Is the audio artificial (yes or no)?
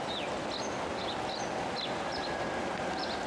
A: no